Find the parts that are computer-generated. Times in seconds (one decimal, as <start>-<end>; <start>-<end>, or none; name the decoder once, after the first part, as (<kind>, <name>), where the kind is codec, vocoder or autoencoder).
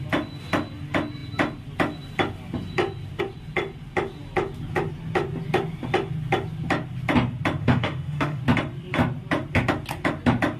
7.6-8.4 (autoencoder, DAC-VAE)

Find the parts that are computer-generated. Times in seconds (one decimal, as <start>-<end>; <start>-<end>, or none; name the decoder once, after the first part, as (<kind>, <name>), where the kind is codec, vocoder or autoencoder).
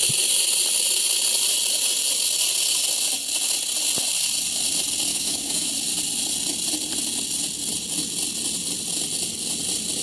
5.1-5.7 (autoencoder, DAC-VAE)